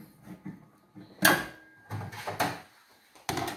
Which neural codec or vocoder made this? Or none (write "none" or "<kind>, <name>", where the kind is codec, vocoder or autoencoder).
none